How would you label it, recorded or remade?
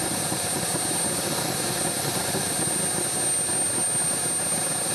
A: recorded